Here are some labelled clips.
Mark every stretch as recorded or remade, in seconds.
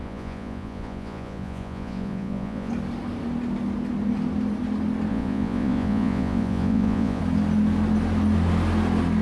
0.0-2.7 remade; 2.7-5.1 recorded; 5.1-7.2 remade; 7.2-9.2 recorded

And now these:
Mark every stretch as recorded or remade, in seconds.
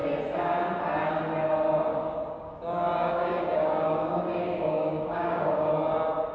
0.0-1.9 recorded; 1.9-5.7 remade; 5.7-6.3 recorded